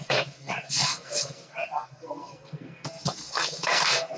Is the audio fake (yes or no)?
yes